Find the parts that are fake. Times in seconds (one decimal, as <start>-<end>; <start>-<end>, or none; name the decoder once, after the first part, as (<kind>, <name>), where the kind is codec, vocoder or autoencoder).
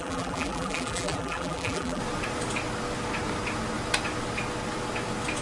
0.0-2.0 (vocoder, BigVGAN v2)